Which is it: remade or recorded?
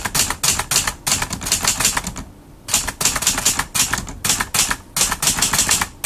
recorded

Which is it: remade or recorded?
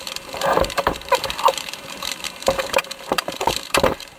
remade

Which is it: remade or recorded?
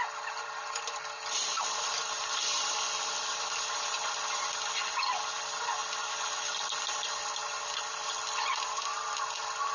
recorded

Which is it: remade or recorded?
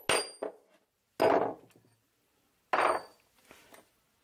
recorded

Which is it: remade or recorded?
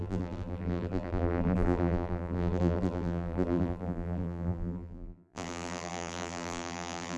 remade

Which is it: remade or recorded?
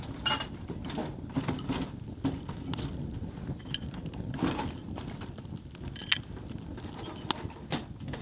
recorded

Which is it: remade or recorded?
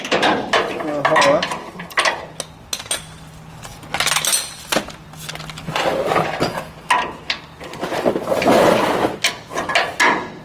recorded